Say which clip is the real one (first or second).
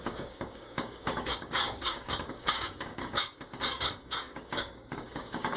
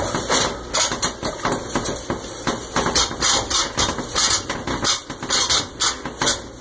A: second